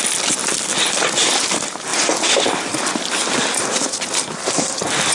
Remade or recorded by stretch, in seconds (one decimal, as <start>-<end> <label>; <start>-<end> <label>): 0.0-5.1 recorded